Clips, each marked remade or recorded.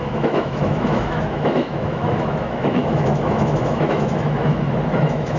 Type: remade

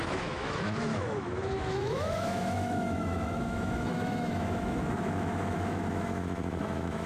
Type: remade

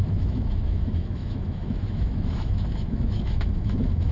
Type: remade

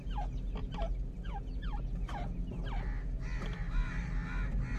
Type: recorded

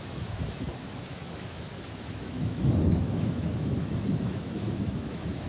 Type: remade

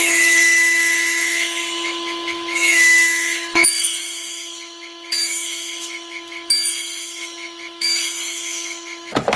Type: remade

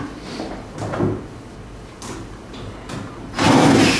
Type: recorded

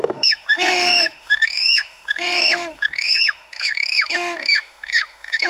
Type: remade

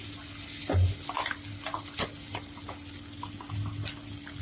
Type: recorded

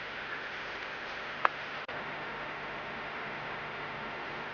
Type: remade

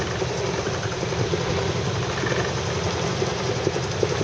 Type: recorded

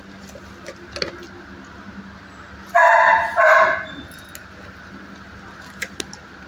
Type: recorded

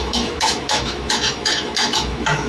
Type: remade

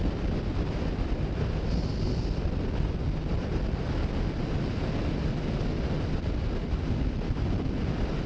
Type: recorded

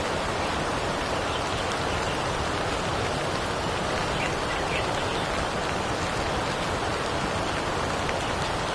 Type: recorded